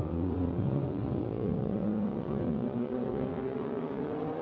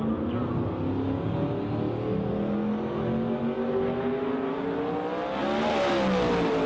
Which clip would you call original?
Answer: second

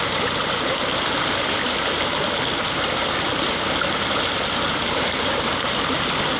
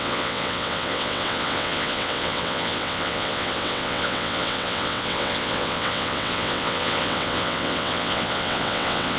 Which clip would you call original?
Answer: first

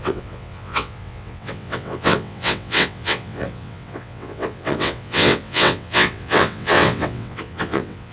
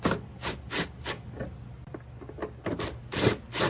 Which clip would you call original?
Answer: second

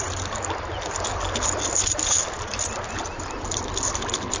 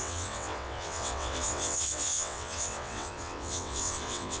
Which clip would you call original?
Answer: first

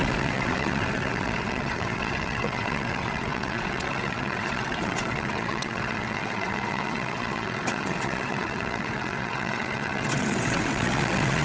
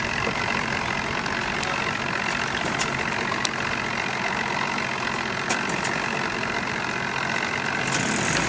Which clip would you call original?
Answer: second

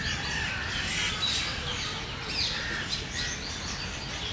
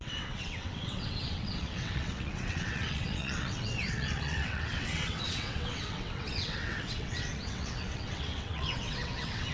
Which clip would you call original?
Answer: first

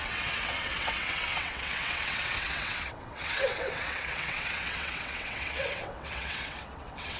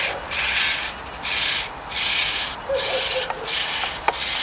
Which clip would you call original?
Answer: second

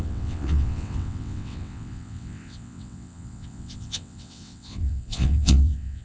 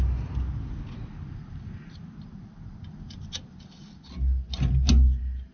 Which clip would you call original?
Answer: second